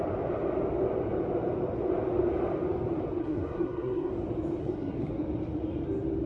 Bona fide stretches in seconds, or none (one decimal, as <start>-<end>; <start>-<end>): 0.0-3.2; 4.1-4.6; 5.1-6.3